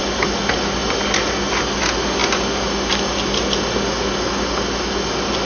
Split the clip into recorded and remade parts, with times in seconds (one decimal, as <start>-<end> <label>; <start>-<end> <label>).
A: 0.0-5.4 recorded